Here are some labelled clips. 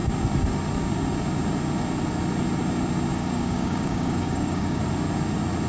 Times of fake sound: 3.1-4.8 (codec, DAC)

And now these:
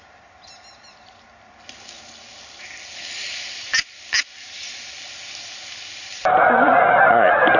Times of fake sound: none

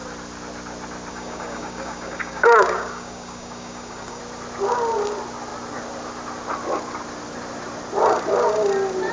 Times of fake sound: 1.1-4.2 (codec, DAC)

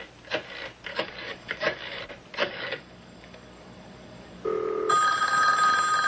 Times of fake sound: 0.9-2.0 (codec, DAC); 2.4-4.4

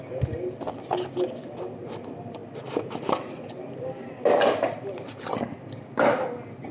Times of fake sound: none